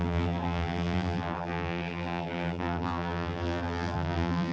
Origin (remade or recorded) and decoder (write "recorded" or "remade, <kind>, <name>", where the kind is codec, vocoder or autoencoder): remade, vocoder, BigVGAN v2